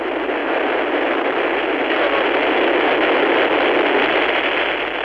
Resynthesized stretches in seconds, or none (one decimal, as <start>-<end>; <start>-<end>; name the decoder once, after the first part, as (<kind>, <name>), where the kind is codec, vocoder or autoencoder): none